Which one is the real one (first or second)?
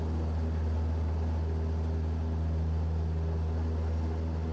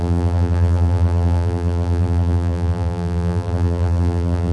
first